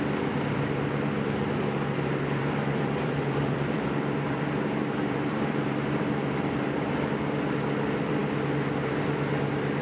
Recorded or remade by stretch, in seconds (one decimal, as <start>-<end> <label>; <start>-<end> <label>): 0.0-2.4 recorded; 2.4-6.7 remade; 6.7-9.8 recorded